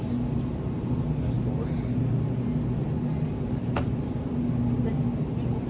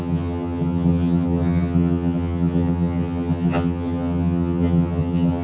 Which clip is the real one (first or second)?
first